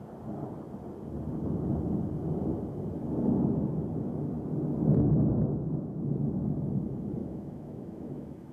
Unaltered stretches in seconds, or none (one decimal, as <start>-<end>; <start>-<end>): 0.0-4.9; 6.1-7.2